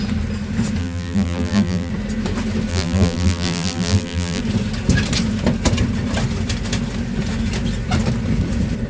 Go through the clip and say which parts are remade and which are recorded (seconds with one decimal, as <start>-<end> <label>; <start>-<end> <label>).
0.0-0.8 recorded; 0.8-1.9 remade; 1.9-2.7 recorded; 2.7-4.4 remade; 4.4-8.9 recorded